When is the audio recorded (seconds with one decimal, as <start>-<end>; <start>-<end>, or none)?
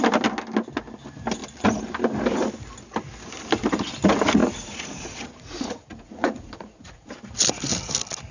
0.0-4.4; 7.1-8.3